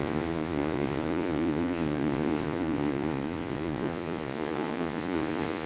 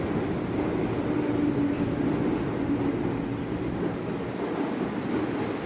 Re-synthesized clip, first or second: first